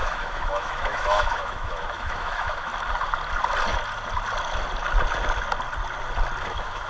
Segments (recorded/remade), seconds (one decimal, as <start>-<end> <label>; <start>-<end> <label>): 0.0-2.7 remade; 2.7-6.4 recorded; 6.4-6.9 remade